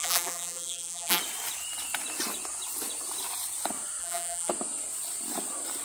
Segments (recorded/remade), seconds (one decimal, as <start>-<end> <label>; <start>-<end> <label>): 0.0-1.2 remade; 1.2-4.0 recorded; 4.0-4.5 remade; 4.5-5.8 recorded